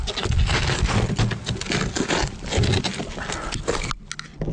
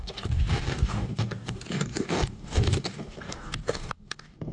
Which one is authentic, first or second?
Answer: first